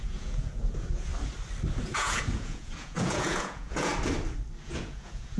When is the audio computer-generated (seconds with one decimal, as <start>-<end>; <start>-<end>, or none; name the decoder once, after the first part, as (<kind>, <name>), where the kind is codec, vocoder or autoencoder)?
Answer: 0.0-1.1 (vocoder, Vocos); 1.7-3.9; 4.6-5.4